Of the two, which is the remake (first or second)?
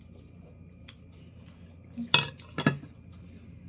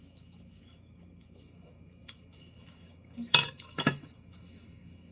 second